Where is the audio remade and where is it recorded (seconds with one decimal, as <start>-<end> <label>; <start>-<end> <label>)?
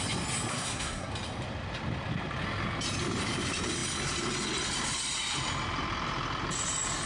0.0-0.5 recorded; 0.5-1.1 remade; 1.1-7.1 recorded